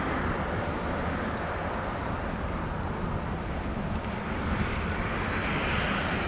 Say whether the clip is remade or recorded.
recorded